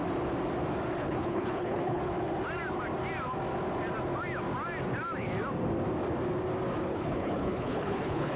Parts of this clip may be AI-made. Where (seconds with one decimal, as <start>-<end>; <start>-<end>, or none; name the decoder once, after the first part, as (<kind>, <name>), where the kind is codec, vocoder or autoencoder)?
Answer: 1.0-2.0 (codec, HILCodec); 6.9-8.4